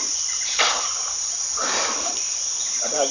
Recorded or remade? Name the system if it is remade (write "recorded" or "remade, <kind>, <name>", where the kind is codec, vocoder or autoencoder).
remade, vocoder, BigVGAN v2